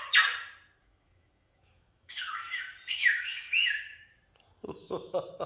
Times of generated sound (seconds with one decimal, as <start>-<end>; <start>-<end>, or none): 0.8-4.1; 4.8-5.5

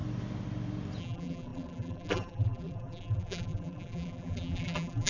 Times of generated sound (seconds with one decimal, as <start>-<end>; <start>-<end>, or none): 1.0-5.1

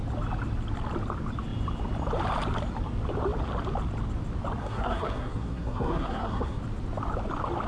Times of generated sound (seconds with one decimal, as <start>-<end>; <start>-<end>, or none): 4.6-6.6

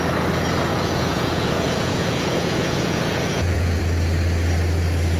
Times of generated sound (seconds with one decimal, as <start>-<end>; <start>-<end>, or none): 0.7-3.8

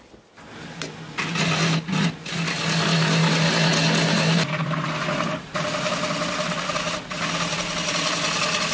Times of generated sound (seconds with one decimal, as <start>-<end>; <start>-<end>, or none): none

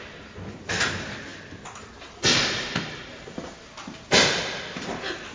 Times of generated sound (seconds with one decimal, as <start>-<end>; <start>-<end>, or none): none

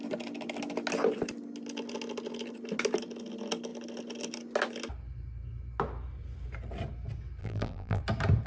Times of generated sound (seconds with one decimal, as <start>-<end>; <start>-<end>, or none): 7.4-8.0